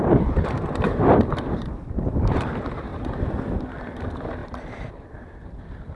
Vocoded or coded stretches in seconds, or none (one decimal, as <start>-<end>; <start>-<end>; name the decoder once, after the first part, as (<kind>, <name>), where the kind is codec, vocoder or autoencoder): 0.0-4.4 (vocoder, BigVGAN v2); 4.9-6.0